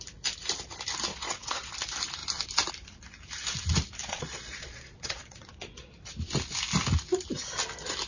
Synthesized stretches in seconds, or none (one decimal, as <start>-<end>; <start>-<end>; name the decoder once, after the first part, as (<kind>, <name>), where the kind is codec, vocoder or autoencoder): 1.1-1.7 (vocoder, Vocos); 4.0-6.0